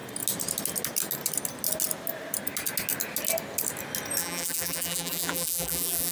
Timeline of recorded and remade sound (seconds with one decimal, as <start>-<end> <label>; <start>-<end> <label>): 0.0-4.2 recorded; 4.2-6.1 remade